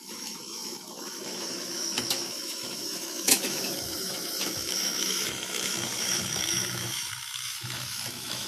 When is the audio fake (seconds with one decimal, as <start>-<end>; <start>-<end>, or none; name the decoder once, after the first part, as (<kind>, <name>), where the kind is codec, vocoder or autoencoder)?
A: 0.0-8.5 (autoencoder, DAC-VAE)